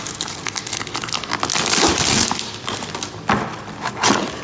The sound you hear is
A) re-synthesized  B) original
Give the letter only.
B